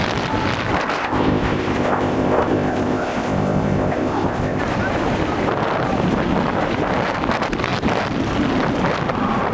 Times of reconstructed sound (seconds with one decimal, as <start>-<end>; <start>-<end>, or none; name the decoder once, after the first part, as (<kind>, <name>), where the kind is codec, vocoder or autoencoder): 1.0-4.6 (codec, ZipCodec)

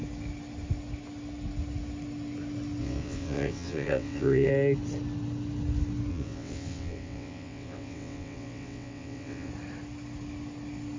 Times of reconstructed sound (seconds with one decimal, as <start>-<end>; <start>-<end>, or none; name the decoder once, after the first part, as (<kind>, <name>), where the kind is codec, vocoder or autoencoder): 2.8-4.5 (vocoder, WaveNeXt); 6.1-9.5

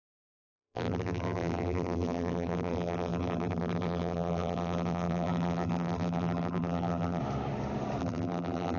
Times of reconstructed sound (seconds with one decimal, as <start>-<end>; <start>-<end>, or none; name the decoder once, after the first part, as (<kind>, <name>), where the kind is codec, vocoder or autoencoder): 0.0-7.2 (vocoder, BigVGAN v2); 8.0-8.8

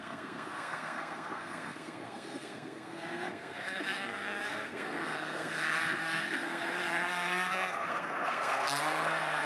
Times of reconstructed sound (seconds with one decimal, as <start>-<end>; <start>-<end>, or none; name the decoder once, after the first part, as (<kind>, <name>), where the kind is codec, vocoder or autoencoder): 0.0-9.5 (codec, SNAC)

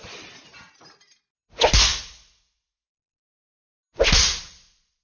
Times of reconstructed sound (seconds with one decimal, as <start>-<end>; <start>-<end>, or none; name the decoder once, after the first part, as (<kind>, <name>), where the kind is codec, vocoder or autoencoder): none

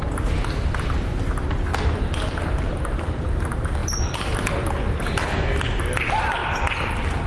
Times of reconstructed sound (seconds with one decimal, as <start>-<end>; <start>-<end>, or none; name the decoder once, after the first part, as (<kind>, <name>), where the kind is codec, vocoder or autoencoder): 3.8-4.5 (vocoder, BigVGAN v2)

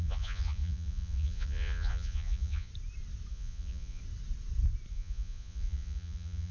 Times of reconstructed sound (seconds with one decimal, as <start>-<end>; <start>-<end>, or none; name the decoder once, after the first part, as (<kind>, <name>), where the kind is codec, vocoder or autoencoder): 0.0-2.7 (vocoder, Vocos); 3.3-4.0; 4.9-6.5

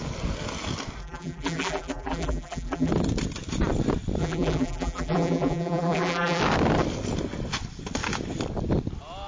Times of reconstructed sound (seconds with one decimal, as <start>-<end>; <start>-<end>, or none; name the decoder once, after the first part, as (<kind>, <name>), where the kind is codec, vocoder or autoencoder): 1.0-2.9 (vocoder, BigVGAN v2); 4.2-6.4